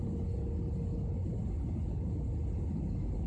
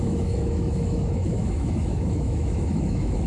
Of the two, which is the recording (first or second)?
first